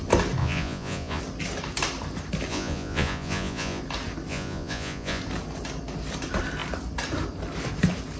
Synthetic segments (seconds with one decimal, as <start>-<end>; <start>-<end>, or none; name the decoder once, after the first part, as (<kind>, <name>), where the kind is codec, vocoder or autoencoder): 0.4-1.2 (vocoder, Vocos); 2.5-3.8; 4.3-5.2